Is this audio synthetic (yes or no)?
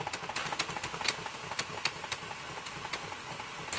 no